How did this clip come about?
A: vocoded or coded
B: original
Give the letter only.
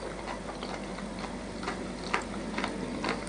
B